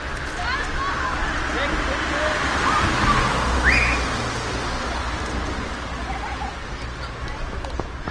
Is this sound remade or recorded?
recorded